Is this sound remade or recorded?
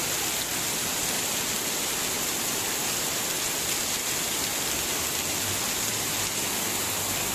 recorded